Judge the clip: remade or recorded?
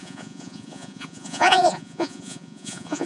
remade